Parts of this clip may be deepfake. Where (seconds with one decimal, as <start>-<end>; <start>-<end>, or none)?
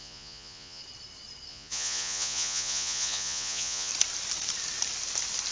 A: 0.0-0.8; 1.5-3.9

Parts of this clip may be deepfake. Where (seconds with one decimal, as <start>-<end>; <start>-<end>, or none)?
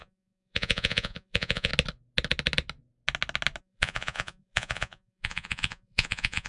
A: 0.0-1.7; 3.6-6.5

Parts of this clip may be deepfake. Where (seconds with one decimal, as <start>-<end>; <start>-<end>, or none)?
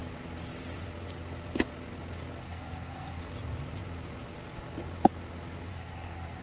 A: 2.4-3.2; 5.7-6.4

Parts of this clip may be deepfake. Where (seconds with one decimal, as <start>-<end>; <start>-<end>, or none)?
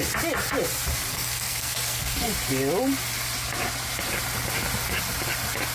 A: 1.1-2.3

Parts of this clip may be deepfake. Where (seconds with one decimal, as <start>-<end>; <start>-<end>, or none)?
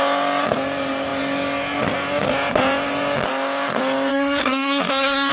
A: 4.1-5.3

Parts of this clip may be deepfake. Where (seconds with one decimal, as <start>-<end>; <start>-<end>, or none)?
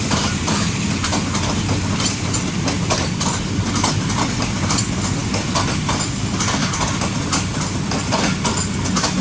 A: none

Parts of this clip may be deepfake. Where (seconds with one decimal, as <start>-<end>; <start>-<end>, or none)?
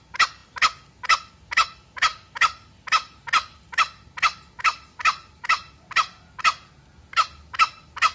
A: none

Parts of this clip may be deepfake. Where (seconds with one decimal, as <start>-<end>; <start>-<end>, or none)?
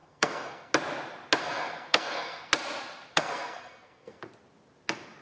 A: 0.0-0.7; 1.4-2.5; 3.1-4.2